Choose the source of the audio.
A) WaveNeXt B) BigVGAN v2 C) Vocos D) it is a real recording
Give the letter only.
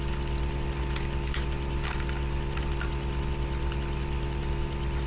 D